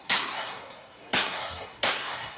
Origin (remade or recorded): remade